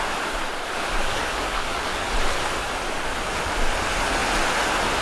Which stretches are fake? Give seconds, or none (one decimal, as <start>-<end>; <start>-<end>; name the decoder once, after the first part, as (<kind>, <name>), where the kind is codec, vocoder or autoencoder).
1.0-2.1 (codec, DAC)